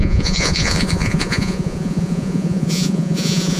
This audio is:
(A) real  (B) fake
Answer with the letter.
B